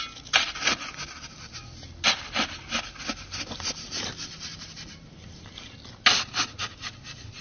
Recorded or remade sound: recorded